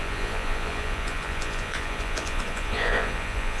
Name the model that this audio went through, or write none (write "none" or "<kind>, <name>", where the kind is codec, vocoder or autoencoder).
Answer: vocoder, Vocos